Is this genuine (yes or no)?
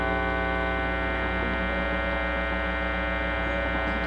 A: yes